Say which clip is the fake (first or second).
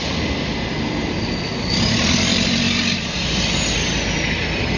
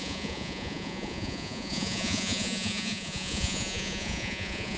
second